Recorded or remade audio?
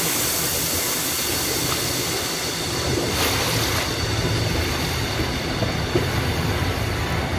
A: recorded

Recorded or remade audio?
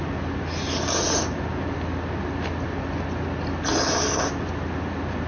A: recorded